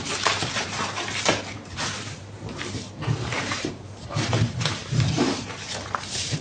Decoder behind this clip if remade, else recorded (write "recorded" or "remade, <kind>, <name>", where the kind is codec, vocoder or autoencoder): remade, vocoder, BigVGAN v2